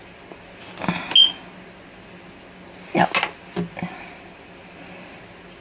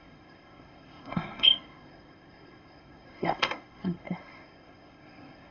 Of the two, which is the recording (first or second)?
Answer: first